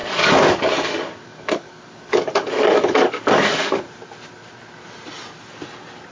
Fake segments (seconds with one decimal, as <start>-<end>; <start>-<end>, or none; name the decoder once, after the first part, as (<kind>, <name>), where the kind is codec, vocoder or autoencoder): 0.0-3.7 (codec, DAC)